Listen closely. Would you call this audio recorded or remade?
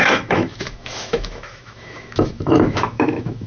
remade